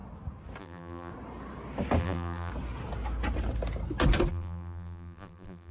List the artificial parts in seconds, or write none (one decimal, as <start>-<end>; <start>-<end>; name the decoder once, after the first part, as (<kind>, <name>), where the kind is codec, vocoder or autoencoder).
0.6-1.1 (vocoder, BigVGAN v2); 2.0-2.5; 4.3-5.7